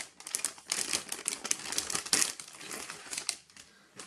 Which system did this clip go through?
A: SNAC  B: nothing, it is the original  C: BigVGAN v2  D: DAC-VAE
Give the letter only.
B